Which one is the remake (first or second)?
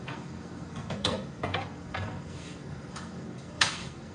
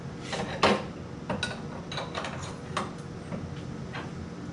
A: first